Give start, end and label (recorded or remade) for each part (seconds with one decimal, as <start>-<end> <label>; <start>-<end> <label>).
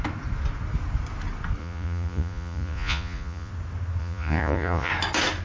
0.0-1.6 recorded; 1.6-3.5 remade; 3.5-4.0 recorded; 4.0-4.9 remade; 4.9-5.4 recorded